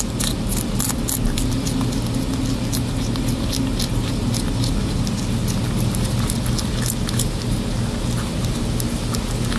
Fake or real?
real